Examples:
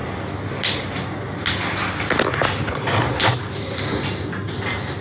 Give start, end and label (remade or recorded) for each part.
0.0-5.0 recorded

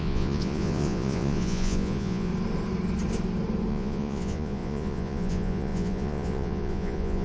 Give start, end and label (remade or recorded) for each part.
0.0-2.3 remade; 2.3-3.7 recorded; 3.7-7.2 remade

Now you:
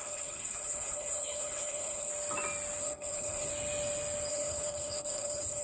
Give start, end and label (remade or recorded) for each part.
0.0-2.1 remade; 2.1-2.8 recorded; 2.8-3.5 remade; 3.5-4.3 recorded; 4.3-5.6 remade

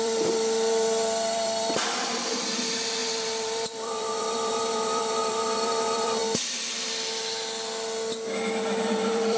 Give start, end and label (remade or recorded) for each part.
0.0-6.2 remade; 6.2-8.8 recorded; 8.8-9.4 remade

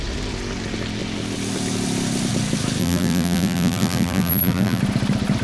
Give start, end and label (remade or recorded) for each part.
0.0-2.8 recorded; 2.8-4.8 remade; 4.8-5.4 recorded

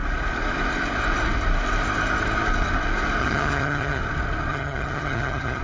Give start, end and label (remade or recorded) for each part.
0.0-3.2 recorded; 3.2-4.0 remade; 4.0-4.5 recorded; 4.5-5.6 remade